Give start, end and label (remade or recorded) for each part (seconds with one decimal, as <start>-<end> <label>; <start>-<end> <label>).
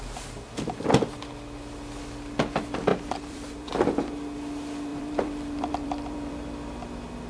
0.0-2.9 recorded; 2.9-3.7 remade; 3.7-4.9 recorded; 4.9-6.3 remade; 6.3-7.3 recorded